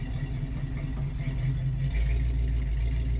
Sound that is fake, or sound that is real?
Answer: real